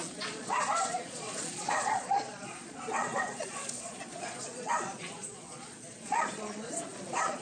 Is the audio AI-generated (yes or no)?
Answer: yes